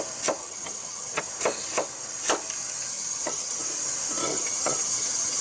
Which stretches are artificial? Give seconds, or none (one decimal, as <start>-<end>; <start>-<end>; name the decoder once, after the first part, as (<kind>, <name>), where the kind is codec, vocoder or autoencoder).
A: 0.4-1.2 (vocoder, HiFi-GAN); 2.9-3.6; 4.2-5.4